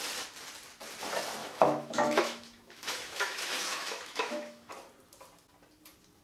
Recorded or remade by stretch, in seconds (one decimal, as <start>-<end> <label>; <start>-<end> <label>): 0.0-1.4 recorded; 1.4-4.7 remade; 4.7-6.2 recorded